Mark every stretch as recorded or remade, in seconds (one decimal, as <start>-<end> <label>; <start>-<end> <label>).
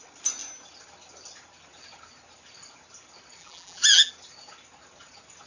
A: 0.0-3.4 recorded; 3.4-4.1 remade; 4.1-5.5 recorded